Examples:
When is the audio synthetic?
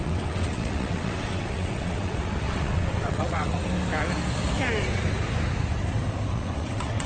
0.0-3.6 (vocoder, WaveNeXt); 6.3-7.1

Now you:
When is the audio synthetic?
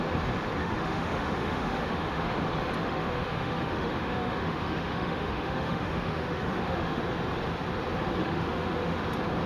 0.6-2.3 (autoencoder, DAC-VAE); 2.8-7.0; 8.2-9.0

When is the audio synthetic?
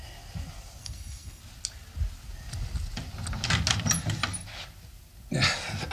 0.8-1.4 (codec, SNAC)